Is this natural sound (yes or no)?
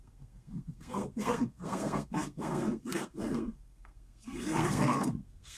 no